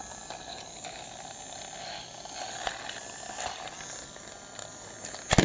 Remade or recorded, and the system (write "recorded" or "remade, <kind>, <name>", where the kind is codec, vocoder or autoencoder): recorded